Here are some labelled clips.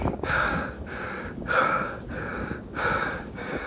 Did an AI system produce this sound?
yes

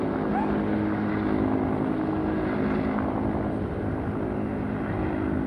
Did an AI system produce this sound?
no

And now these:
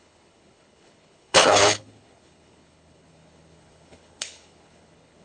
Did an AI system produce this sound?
yes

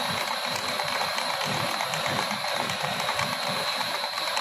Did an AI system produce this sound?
yes